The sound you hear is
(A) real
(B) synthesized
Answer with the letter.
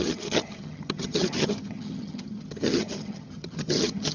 B